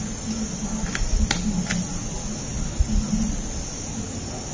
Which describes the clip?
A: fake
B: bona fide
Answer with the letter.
B